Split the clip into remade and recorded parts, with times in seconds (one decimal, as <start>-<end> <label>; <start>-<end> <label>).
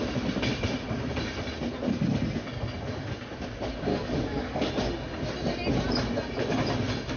0.0-3.9 recorded; 3.9-4.7 remade; 4.7-7.2 recorded